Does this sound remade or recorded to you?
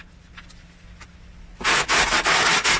recorded